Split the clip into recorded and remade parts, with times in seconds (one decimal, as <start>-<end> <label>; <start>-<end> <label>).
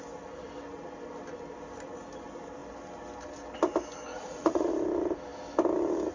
0.0-4.1 recorded; 4.1-4.7 remade; 4.7-6.1 recorded